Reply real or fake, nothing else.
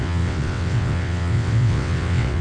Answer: fake